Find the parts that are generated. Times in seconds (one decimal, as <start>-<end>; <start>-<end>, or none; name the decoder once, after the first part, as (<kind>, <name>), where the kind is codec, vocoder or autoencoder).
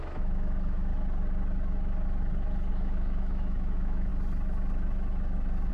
0.0-0.9 (autoencoder, DAC-VAE); 2.7-4.1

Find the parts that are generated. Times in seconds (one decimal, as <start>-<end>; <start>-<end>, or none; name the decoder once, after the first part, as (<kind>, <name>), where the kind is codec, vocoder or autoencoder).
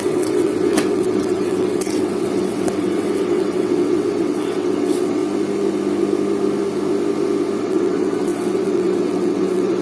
0.0-5.2 (vocoder, WaveNeXt); 7.6-9.8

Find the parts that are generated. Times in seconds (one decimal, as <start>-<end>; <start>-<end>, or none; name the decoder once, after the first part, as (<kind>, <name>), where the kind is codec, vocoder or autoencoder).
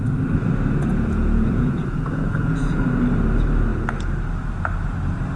0.9-2.8 (vocoder, Vocos)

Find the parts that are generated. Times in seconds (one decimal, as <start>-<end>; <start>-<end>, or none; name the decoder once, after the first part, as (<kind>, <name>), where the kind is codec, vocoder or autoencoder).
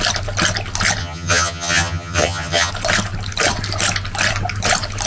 1.0-2.7 (vocoder, HiFi-GAN)